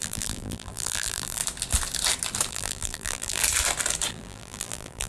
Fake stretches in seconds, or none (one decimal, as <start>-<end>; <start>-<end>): 0.0-1.4; 2.5-3.4; 4.1-5.1

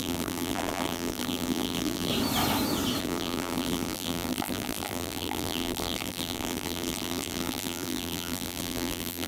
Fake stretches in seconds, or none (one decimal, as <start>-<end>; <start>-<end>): 0.0-2.1; 3.0-9.3

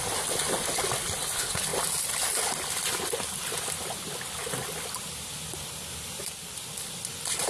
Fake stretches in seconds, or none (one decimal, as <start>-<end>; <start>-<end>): none

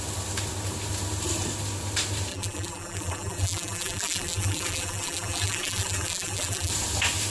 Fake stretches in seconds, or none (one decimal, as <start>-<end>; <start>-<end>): 2.3-6.7

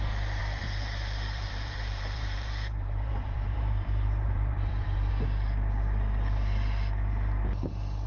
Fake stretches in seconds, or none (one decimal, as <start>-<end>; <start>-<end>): 0.4-5.1

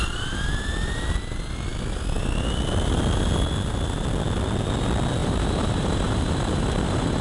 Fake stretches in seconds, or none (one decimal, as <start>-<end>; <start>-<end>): 0.0-0.9; 5.2-7.2